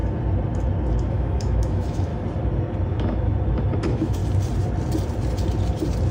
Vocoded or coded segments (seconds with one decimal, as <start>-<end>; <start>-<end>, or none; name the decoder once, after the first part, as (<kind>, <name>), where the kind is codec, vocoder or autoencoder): 1.1-2.1 (autoencoder, DAC-VAE); 2.9-3.3; 3.8-4.2